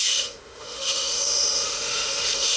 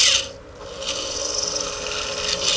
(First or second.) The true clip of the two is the second